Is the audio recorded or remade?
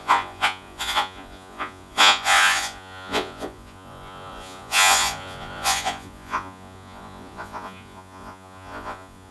remade